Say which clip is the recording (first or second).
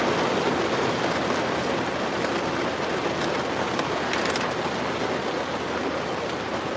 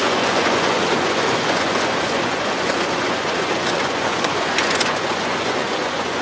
first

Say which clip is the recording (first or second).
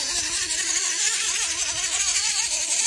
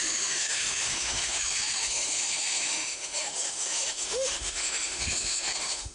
first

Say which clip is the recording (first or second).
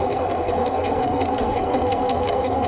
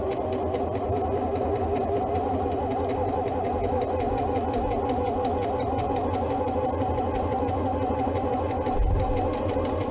second